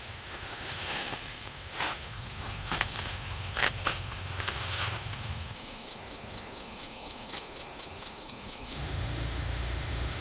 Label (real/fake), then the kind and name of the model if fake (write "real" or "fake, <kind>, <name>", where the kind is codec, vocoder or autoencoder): fake, autoencoder, DAC-VAE